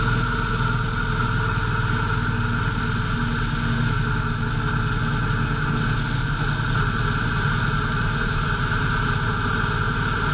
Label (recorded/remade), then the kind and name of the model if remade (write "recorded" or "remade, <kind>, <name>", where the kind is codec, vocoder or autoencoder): recorded